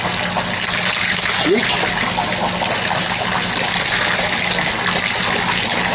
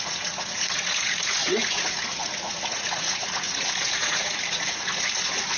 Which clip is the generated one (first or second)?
second